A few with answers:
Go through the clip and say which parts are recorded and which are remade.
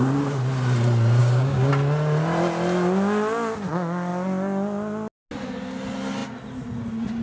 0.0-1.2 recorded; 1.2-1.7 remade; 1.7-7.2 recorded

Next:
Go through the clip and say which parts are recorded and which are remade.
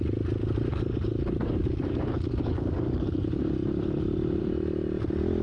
0.0-0.7 recorded; 0.7-3.3 remade; 3.3-5.4 recorded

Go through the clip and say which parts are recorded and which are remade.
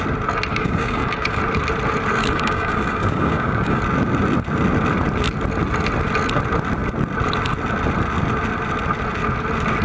0.0-0.5 recorded; 0.5-1.4 remade; 1.4-2.2 recorded; 2.2-3.8 remade; 3.8-9.8 recorded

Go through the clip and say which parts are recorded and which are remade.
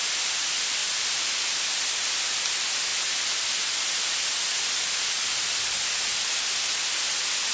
0.0-7.5 recorded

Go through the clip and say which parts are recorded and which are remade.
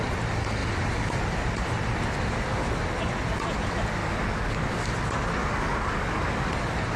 0.0-4.0 recorded; 4.0-4.8 remade; 4.8-5.4 recorded; 5.4-6.5 remade; 6.5-7.0 recorded